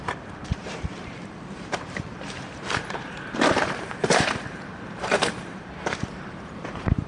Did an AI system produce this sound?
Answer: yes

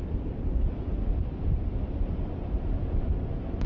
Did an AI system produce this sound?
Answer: yes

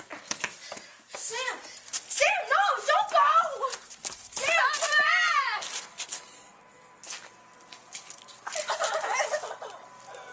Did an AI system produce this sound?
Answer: no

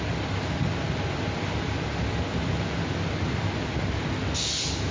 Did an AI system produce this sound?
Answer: no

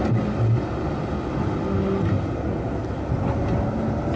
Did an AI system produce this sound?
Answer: no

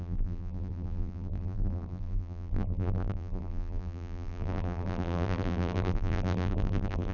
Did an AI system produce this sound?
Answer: yes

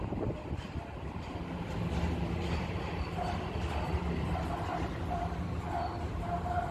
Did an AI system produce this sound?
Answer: no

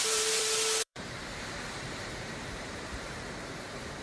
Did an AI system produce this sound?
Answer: yes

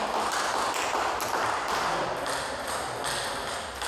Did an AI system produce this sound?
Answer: no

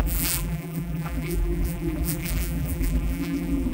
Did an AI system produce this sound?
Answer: yes